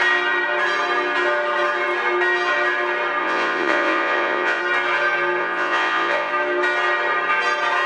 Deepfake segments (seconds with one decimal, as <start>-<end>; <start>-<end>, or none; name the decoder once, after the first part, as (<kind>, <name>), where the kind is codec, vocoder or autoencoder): 3.2-4.6 (vocoder, Vocos); 5.4-6.3